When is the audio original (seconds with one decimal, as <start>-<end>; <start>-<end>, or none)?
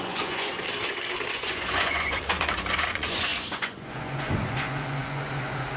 0.5-1.3